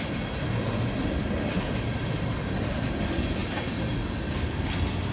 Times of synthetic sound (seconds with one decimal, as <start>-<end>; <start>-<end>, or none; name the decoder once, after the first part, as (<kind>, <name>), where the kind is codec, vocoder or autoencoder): none